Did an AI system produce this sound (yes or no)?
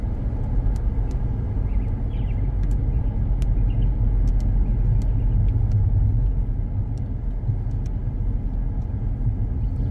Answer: no